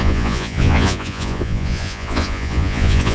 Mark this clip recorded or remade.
remade